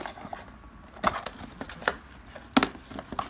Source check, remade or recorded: recorded